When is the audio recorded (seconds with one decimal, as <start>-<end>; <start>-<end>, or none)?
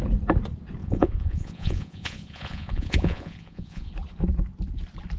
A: 0.0-0.8; 3.9-5.2